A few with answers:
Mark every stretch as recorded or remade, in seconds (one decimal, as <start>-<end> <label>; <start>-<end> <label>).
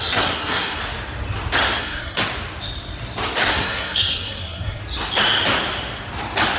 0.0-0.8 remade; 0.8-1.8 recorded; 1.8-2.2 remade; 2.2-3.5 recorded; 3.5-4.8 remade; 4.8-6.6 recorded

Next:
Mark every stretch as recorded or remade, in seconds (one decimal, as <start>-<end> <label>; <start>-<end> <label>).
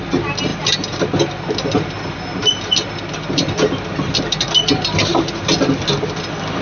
0.0-6.6 recorded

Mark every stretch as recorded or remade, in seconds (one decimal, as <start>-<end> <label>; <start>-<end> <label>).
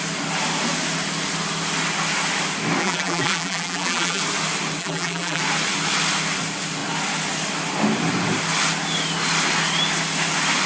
0.0-2.8 recorded; 2.8-4.2 remade; 4.2-4.8 recorded; 4.8-5.4 remade; 5.4-10.7 recorded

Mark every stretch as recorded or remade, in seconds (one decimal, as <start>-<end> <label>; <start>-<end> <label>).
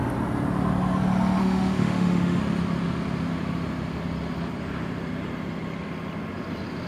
0.0-1.4 recorded; 1.4-2.4 remade; 2.4-6.9 recorded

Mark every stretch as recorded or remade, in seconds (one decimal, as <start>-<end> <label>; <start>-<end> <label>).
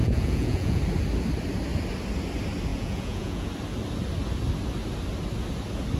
0.0-0.8 remade; 0.8-2.7 recorded; 2.7-3.5 remade; 3.5-6.0 recorded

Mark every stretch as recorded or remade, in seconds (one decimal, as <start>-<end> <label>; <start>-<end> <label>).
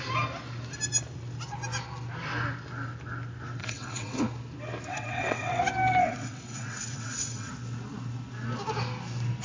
0.0-3.6 recorded; 3.6-4.2 remade; 4.2-4.9 recorded; 4.9-5.6 remade; 5.6-6.0 recorded; 6.0-7.5 remade; 7.5-9.4 recorded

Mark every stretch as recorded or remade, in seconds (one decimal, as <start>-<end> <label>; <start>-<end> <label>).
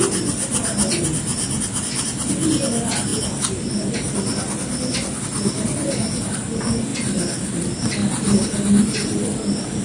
0.0-9.8 recorded